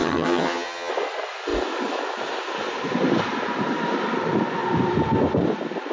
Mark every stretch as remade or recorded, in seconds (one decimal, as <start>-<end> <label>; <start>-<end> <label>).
0.0-0.9 remade; 0.9-5.9 recorded